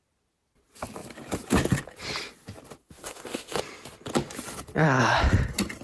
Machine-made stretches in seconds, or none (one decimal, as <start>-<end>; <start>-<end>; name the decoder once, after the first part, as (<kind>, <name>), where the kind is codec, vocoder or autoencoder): 2.8-3.6 (autoencoder, DAC-VAE)